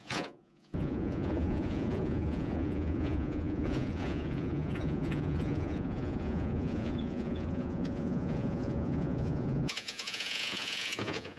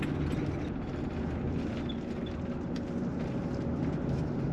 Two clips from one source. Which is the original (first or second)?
second